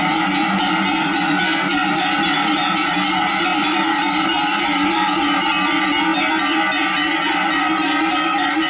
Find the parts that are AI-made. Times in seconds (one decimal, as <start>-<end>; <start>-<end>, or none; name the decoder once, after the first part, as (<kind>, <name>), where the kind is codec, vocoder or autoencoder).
3.5-5.5 (vocoder, BigVGAN v2)